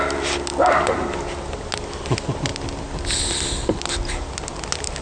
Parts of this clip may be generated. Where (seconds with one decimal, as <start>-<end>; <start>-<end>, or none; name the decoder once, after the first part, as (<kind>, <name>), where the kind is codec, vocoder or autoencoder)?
none